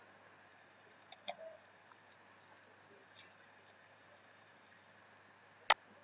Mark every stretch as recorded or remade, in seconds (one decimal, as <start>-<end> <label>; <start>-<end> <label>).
0.0-0.5 recorded; 0.5-2.1 remade; 2.1-3.0 recorded; 3.0-5.0 remade; 5.0-6.0 recorded